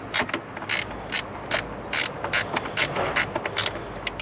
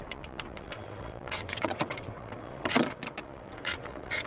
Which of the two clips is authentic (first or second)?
first